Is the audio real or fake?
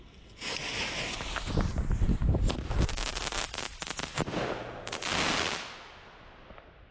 real